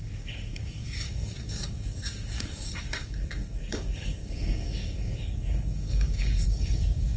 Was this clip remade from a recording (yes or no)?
yes